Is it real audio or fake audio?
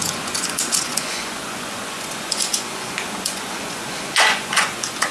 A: fake